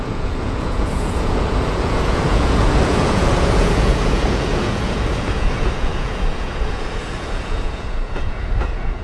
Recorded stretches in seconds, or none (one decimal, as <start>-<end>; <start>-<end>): none